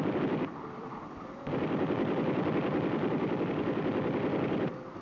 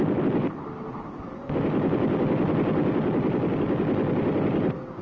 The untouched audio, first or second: second